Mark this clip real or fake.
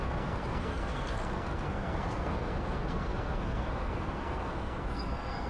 fake